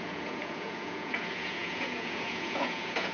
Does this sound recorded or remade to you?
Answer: remade